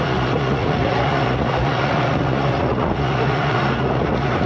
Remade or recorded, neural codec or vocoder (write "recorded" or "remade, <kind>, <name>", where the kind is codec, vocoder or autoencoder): remade, vocoder, Vocos